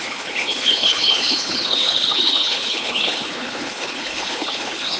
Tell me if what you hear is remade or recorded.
remade